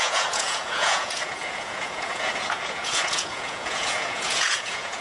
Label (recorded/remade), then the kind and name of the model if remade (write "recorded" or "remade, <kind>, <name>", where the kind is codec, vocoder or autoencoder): remade, vocoder, Vocos